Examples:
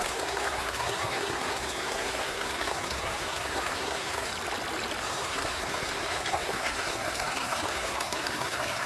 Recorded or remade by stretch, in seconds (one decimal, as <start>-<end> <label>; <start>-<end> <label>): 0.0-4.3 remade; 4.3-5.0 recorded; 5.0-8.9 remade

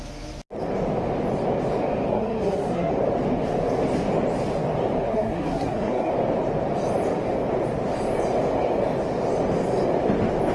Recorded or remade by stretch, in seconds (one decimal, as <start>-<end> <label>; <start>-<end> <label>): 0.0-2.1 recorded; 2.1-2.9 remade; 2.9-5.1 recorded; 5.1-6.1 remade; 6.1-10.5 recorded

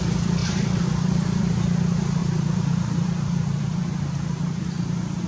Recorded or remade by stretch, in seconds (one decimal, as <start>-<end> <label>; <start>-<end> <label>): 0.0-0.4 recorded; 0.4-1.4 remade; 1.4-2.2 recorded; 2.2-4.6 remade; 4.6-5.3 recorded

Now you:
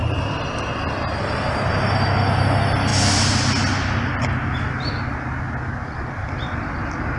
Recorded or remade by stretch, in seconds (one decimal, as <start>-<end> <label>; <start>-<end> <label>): 0.0-7.2 recorded